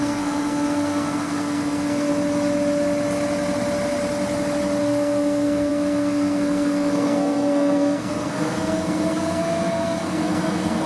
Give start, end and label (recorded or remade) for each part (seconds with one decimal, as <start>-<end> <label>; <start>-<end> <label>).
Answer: 0.0-2.1 remade; 2.1-4.8 recorded; 4.8-10.9 remade